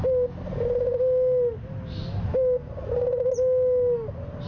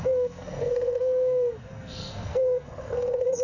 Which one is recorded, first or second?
first